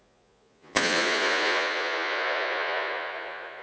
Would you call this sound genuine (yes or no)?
no